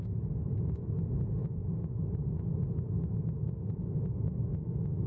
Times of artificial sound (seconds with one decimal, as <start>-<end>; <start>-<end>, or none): none